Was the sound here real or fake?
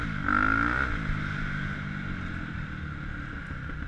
real